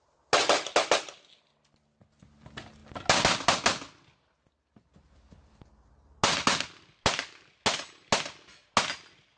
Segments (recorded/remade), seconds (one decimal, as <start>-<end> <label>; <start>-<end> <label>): 0.0-9.4 recorded